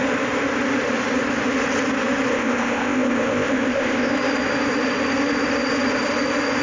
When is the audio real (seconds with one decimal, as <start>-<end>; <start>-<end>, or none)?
0.0-2.3; 4.1-6.6